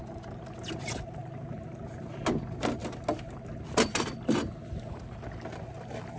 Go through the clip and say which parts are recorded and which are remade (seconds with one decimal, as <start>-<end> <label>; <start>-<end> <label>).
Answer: 0.0-6.2 recorded